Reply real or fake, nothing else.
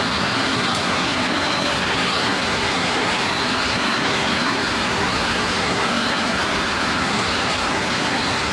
fake